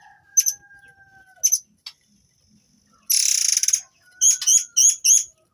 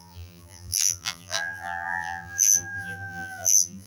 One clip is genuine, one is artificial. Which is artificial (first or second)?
second